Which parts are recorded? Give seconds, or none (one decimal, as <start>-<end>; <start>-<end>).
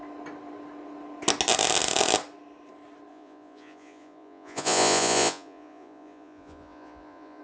0.0-3.1